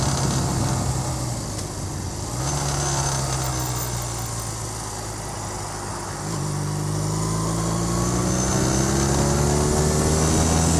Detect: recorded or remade recorded